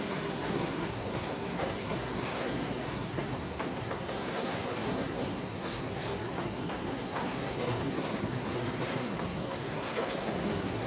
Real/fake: fake